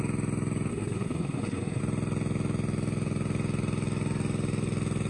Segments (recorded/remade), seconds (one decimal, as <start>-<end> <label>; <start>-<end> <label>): 0.0-0.7 recorded; 0.7-1.8 remade; 1.8-5.1 recorded